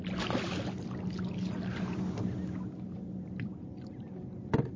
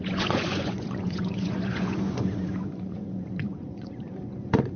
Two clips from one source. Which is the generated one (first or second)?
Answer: second